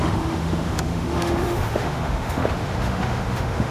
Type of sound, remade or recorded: remade